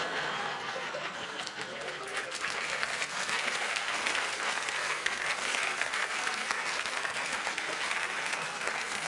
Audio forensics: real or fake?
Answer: fake